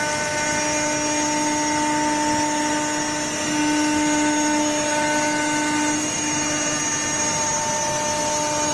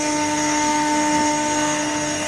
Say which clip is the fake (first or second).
second